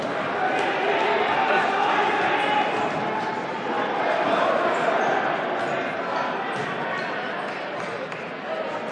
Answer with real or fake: real